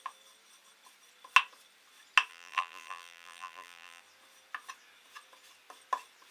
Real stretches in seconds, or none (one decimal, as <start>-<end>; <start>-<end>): 0.0-2.3; 4.0-6.3